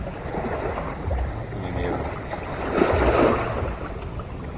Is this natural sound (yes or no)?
yes